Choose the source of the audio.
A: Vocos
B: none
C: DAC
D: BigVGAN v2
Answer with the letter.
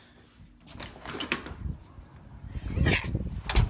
B